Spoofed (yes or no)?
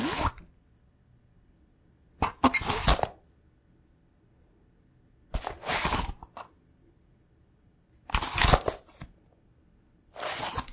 no